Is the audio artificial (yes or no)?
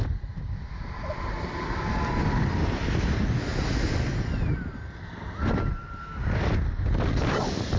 no